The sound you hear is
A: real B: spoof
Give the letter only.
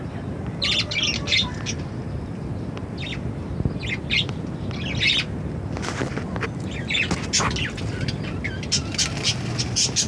A